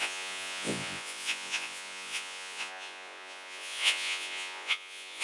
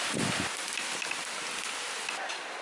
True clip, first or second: second